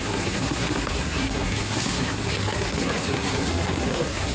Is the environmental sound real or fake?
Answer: fake